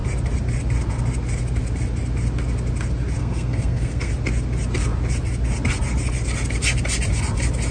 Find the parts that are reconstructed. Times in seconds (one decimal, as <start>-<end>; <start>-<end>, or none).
3.2-4.1